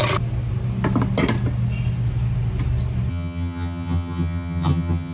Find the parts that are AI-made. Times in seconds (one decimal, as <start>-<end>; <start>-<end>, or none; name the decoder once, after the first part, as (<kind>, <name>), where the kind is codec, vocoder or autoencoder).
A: 3.1-5.1 (vocoder, HiFi-GAN)